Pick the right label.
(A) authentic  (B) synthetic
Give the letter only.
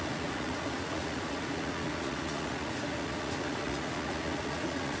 B